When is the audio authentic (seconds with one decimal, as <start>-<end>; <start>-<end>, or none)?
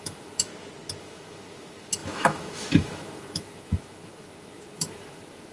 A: 0.5-1.0